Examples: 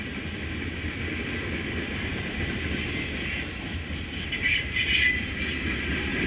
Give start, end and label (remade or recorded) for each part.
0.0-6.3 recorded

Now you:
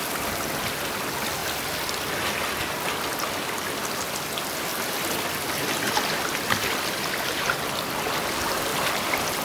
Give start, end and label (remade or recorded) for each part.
0.0-4.7 recorded; 4.7-7.1 remade; 7.1-8.7 recorded; 8.7-9.4 remade

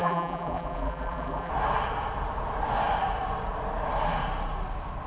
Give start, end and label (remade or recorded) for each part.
0.0-1.5 remade; 1.5-5.1 recorded

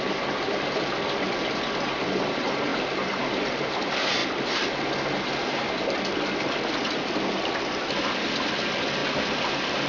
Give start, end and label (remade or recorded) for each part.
0.0-4.2 remade; 4.2-8.0 recorded; 8.0-9.9 remade

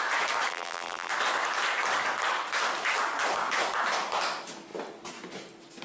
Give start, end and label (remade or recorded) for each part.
0.0-0.5 recorded; 0.5-1.1 remade; 1.1-5.8 recorded

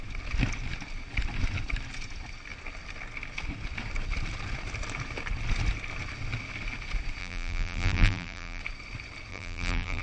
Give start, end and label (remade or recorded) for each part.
0.0-7.2 recorded; 7.2-8.6 remade; 8.6-9.3 recorded; 9.3-10.0 remade